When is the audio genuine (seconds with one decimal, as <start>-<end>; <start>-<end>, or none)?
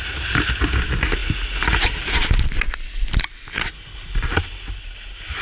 0.0-5.4